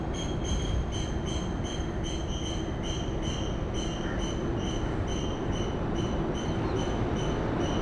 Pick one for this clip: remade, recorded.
recorded